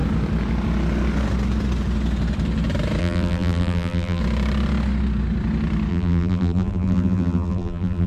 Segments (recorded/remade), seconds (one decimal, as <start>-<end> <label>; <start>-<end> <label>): 0.0-3.0 recorded; 3.0-4.2 remade; 4.2-5.9 recorded; 5.9-8.1 remade